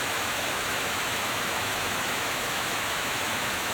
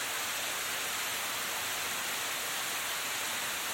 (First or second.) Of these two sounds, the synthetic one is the first